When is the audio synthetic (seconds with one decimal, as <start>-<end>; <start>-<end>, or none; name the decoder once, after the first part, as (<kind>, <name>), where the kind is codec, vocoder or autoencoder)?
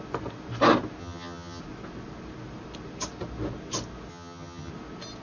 1.0-1.6 (vocoder, HiFi-GAN); 4.1-4.7